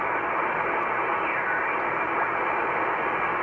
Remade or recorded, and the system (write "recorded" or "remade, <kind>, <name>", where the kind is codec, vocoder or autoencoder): recorded